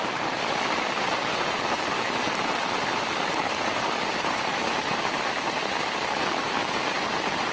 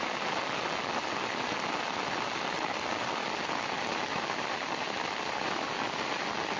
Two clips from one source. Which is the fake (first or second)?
first